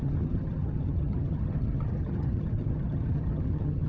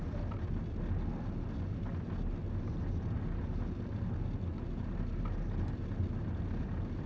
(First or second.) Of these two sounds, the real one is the second